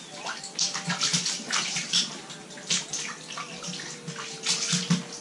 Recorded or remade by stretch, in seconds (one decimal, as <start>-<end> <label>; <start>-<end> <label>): 0.0-5.2 recorded